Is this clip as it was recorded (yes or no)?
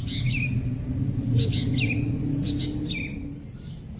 yes